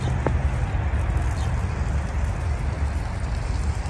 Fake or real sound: real